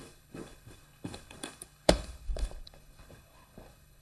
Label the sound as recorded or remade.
remade